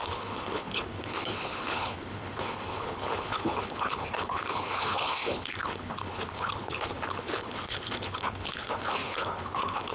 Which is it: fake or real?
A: fake